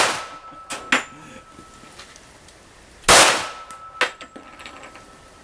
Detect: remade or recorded recorded